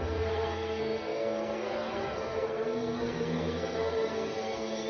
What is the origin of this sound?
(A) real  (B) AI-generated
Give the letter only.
B